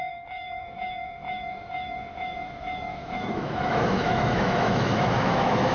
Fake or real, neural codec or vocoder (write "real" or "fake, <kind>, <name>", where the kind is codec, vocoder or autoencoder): fake, autoencoder, DAC-VAE